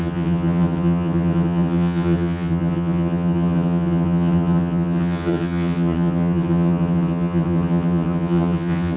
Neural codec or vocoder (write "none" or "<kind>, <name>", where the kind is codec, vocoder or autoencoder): vocoder, HiFi-GAN